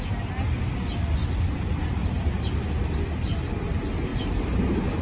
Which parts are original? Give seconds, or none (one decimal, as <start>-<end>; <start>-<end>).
0.0-1.2; 2.2-4.1